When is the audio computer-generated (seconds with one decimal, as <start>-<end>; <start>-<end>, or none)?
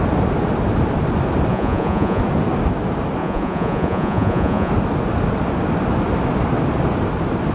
1.5-2.2; 3.2-4.7